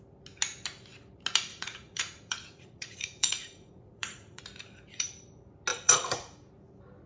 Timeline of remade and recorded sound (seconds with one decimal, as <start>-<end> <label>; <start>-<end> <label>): 0.0-1.5 recorded; 1.5-4.4 remade; 4.4-5.7 recorded; 5.7-6.5 remade; 6.5-7.1 recorded

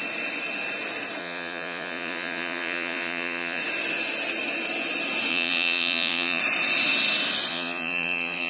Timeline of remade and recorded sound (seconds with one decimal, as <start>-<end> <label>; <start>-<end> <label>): 0.0-1.2 recorded; 1.2-3.6 remade; 3.6-5.3 recorded; 5.3-6.4 remade; 6.4-7.5 recorded; 7.5-8.5 remade